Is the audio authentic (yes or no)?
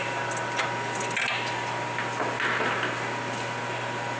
yes